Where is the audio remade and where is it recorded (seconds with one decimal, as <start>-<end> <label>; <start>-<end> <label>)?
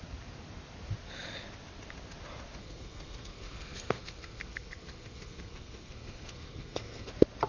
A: 0.0-2.6 recorded; 2.6-7.1 remade; 7.1-7.5 recorded